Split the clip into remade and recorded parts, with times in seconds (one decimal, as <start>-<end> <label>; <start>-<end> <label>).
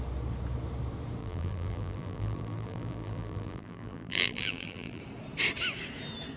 0.0-1.2 recorded; 1.2-5.0 remade; 5.0-6.4 recorded